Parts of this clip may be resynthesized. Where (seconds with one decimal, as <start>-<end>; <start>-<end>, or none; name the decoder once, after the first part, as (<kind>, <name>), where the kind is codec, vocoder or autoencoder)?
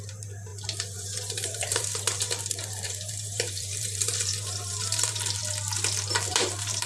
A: 0.0-5.4 (vocoder, BigVGAN v2); 6.3-6.9